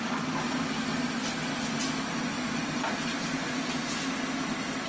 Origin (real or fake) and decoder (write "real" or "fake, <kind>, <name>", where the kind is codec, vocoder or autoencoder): real